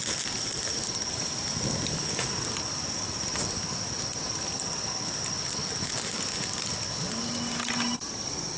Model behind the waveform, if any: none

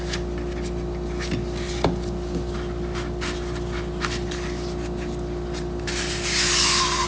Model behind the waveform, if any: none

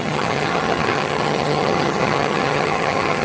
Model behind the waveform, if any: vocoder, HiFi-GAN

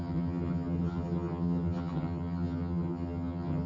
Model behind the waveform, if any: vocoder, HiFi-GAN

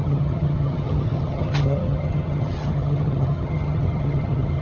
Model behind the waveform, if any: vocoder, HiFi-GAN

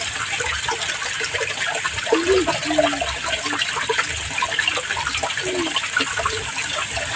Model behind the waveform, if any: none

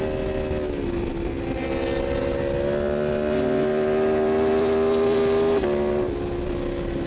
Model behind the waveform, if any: none